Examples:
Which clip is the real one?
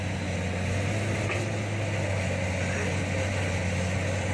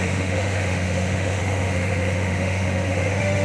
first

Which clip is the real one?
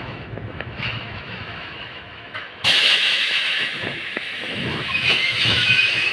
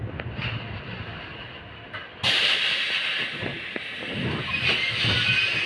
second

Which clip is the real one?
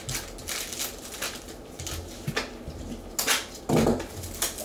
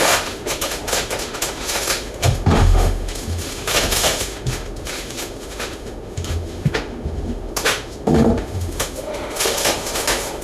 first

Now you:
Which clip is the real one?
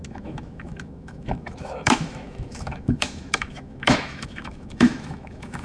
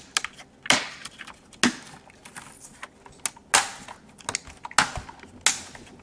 second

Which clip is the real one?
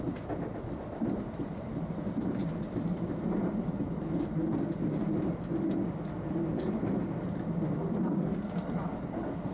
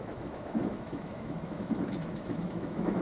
first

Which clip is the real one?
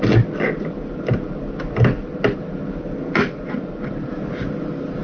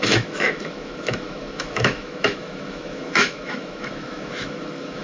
first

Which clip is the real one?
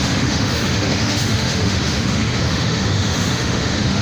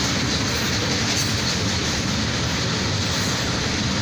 second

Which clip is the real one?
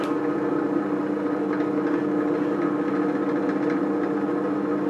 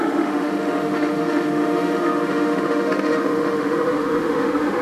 first